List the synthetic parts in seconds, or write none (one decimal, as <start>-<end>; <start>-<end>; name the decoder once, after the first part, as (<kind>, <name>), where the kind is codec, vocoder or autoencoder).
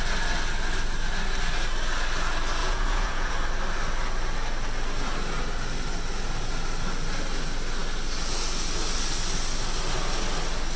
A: 2.6-3.3 (vocoder, Vocos)